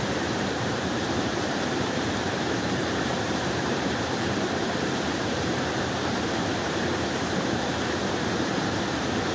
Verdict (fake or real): fake